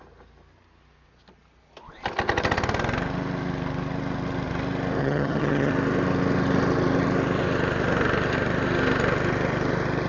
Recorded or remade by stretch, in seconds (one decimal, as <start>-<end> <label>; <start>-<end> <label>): 0.0-5.0 recorded; 5.0-5.7 remade; 5.7-10.1 recorded